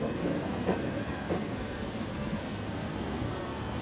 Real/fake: fake